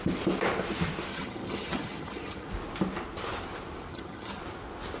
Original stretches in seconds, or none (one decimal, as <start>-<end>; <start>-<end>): 0.0-1.1; 2.5-3.9; 4.4-5.0